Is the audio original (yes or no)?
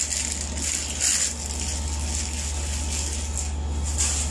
yes